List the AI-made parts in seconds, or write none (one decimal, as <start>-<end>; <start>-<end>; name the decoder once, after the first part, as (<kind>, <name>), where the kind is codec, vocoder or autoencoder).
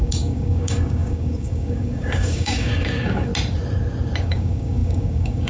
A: 0.0-3.3 (codec, DAC); 4.2-5.5